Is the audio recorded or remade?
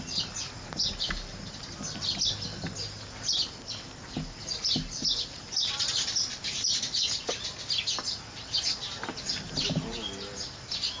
recorded